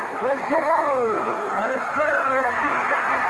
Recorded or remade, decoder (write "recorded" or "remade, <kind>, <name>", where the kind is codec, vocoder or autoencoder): remade, codec, SNAC